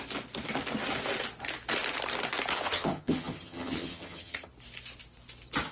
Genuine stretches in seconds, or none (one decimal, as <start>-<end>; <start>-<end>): 0.0-2.5; 4.5-5.7